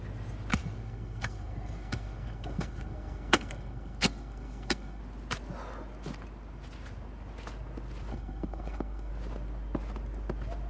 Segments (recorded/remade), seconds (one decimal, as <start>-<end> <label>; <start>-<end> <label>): 0.0-0.5 recorded; 0.5-5.0 remade; 5.0-8.1 recorded; 8.1-9.1 remade; 9.1-10.7 recorded